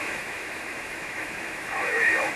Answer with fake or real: fake